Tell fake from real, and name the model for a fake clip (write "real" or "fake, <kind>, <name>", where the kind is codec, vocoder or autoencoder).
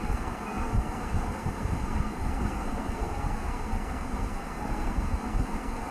fake, codec, SNAC